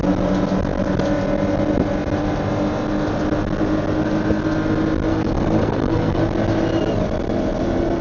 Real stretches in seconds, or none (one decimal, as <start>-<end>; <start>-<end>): 0.0-5.1; 6.2-8.0